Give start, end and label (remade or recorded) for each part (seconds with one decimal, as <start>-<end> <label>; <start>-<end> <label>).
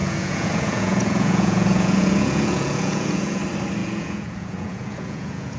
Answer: 0.0-3.4 remade; 3.4-3.8 recorded; 3.8-5.6 remade